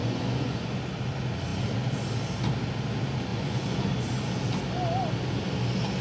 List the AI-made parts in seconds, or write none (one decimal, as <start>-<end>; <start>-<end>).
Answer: 0.0-0.8; 3.3-3.9